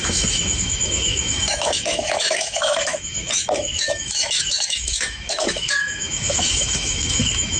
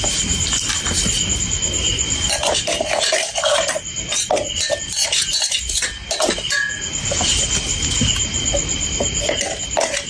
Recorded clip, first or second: second